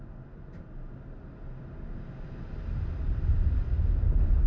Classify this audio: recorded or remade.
recorded